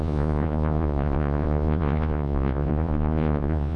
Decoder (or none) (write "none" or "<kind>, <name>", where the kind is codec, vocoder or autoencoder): vocoder, Vocos